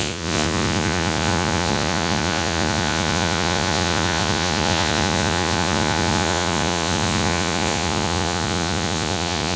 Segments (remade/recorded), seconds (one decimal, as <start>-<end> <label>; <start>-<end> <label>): 0.0-9.6 remade